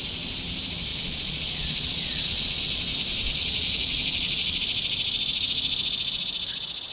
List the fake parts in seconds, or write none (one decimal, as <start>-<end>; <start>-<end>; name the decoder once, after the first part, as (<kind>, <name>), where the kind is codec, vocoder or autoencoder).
0.9-2.8 (vocoder, Vocos); 3.3-4.6